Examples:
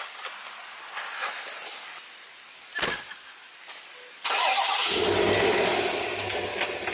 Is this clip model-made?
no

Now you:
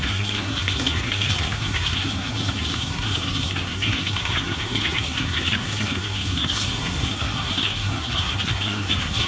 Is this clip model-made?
yes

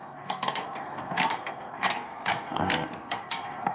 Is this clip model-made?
yes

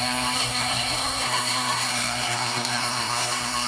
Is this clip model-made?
yes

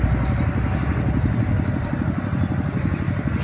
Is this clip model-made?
no